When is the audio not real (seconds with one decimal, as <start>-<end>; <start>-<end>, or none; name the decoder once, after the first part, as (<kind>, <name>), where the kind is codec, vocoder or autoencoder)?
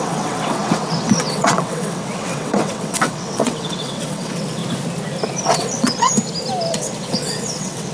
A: 0.0-4.6 (vocoder, WaveNeXt); 5.4-6.1; 6.7-7.9